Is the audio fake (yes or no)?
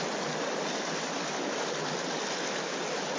no